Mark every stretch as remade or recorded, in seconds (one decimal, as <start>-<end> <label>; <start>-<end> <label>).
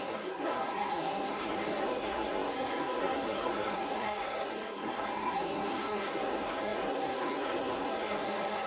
0.0-8.7 remade